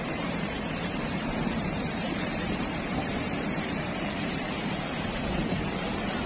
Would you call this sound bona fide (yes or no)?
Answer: no